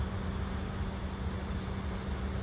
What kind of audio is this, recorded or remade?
recorded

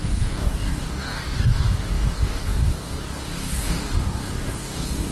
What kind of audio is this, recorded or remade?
remade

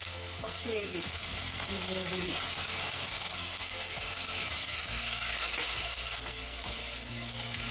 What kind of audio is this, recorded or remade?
remade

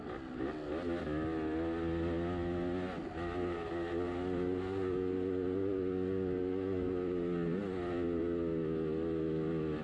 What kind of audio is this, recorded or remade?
recorded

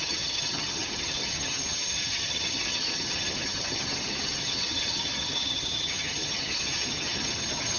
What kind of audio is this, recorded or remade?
remade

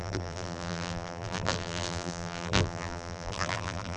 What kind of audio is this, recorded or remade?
remade